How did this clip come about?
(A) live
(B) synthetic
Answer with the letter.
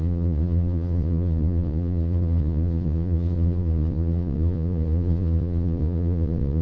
B